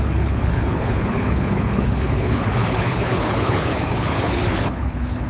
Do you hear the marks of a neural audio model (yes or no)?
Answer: yes